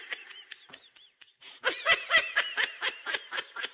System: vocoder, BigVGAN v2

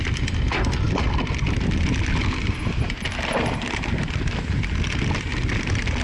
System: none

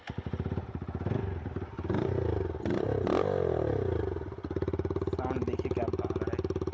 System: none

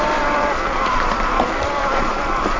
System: vocoder, BigVGAN v2